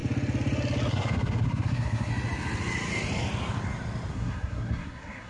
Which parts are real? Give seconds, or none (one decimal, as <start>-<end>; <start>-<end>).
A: 0.0-0.9; 2.1-4.1

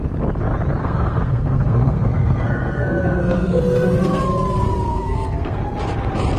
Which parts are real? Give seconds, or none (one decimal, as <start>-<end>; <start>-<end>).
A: 0.0-0.8; 4.2-4.9; 5.6-6.4